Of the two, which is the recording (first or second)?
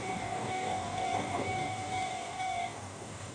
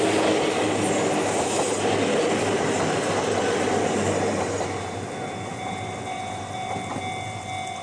second